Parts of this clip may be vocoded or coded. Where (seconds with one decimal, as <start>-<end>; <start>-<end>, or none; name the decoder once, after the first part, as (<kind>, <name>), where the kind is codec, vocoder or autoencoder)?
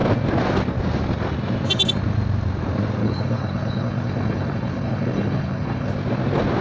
3.0-5.9 (codec, HILCodec)